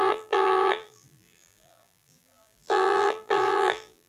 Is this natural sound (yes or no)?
no